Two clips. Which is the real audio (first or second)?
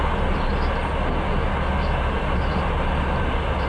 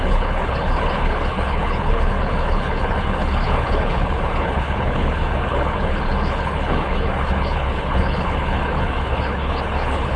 first